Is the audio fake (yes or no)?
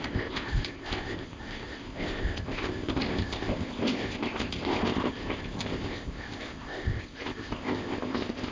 yes